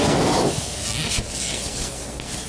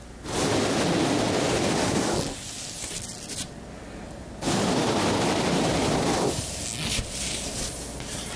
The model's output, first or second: first